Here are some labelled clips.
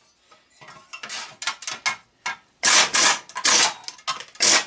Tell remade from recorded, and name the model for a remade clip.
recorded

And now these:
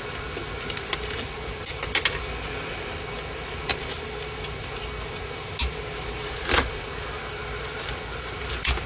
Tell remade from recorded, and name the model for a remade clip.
recorded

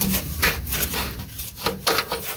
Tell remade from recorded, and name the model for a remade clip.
recorded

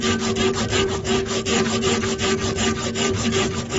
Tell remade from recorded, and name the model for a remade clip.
recorded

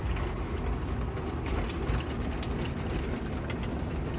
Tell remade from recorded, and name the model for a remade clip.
recorded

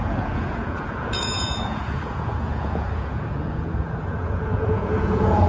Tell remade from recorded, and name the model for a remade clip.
remade, vocoder, Vocos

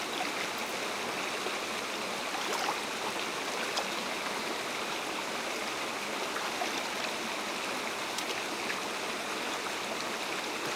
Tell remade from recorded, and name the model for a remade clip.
recorded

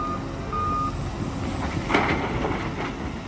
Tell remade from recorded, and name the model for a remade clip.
recorded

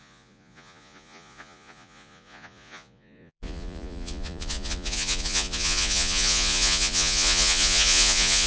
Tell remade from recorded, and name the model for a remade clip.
remade, vocoder, Vocos